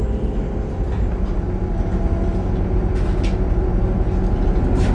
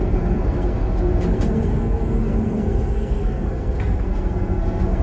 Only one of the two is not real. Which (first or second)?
second